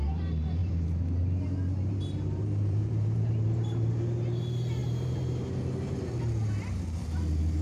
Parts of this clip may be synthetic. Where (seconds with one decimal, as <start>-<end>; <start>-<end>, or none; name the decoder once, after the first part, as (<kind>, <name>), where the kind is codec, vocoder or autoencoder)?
0.6-3.9 (vocoder, BigVGAN v2); 4.8-5.5